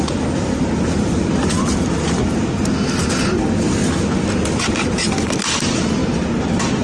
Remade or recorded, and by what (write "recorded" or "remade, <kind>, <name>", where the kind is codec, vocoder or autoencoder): recorded